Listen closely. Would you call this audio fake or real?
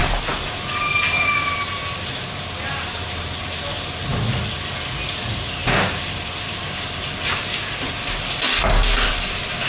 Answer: real